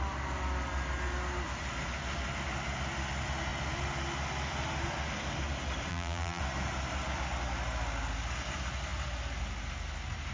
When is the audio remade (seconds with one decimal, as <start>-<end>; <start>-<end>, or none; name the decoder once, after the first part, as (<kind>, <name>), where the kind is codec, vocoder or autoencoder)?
5.9-6.4 (vocoder, BigVGAN v2)